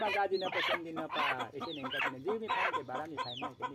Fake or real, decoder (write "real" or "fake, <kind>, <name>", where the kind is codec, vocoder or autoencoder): real